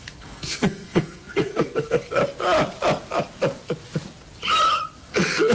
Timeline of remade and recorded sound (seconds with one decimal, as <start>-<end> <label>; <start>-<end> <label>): 0.0-2.2 remade; 2.2-5.0 recorded; 5.0-5.5 remade